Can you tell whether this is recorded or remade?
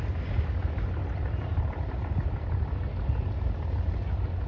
recorded